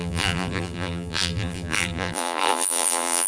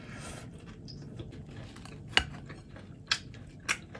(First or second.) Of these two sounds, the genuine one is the second